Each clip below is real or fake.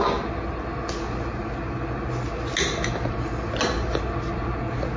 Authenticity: real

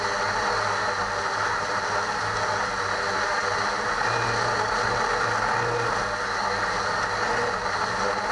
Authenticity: real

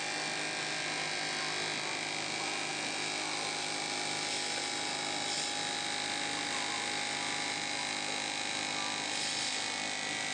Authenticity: real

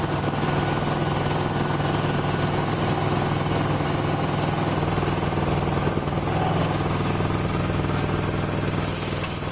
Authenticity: real